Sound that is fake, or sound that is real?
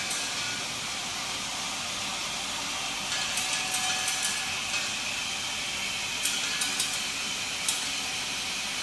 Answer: real